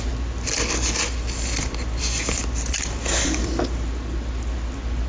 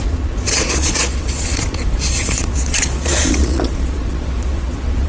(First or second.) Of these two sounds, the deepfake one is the second